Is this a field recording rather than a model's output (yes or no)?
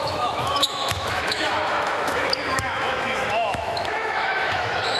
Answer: no